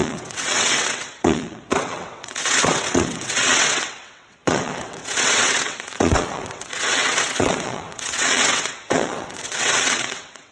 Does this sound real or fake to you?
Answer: fake